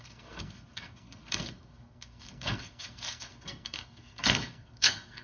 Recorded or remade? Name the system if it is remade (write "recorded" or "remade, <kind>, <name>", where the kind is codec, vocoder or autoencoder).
remade, codec, SNAC